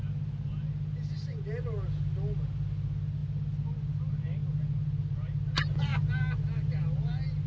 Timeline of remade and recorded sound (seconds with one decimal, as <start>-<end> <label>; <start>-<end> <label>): 0.0-7.5 recorded